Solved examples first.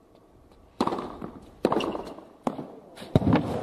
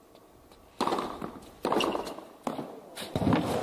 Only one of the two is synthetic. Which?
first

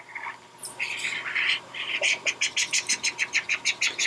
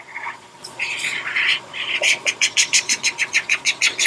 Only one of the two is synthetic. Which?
second